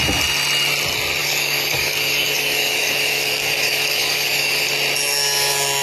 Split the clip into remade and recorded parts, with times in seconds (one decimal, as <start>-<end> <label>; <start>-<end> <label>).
0.0-1.2 recorded; 1.2-4.7 remade; 4.7-5.8 recorded

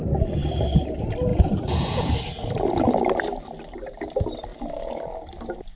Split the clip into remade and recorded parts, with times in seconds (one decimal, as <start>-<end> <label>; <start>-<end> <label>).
0.0-1.3 recorded; 1.3-2.1 remade; 2.1-5.8 recorded

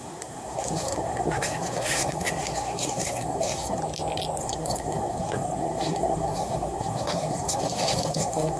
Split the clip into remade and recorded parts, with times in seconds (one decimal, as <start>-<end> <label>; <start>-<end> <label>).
0.0-3.8 remade; 3.8-4.4 recorded; 4.4-8.6 remade

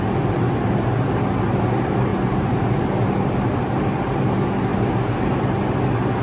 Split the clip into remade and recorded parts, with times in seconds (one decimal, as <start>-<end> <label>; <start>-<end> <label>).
0.0-2.1 recorded; 2.1-2.6 remade; 2.6-4.7 recorded; 4.7-5.4 remade; 5.4-6.2 recorded

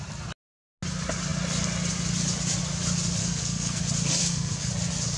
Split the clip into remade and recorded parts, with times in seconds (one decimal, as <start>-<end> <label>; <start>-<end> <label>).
0.0-3.2 recorded; 3.2-3.8 remade; 3.8-4.2 recorded; 4.2-4.7 remade; 4.7-5.2 recorded

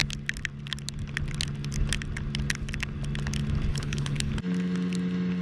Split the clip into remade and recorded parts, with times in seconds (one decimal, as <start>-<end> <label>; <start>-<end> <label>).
0.0-3.7 recorded; 3.7-4.3 remade; 4.3-5.4 recorded